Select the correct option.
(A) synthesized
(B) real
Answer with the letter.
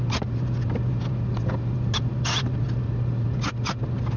B